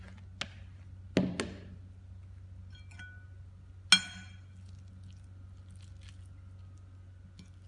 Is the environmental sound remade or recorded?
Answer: recorded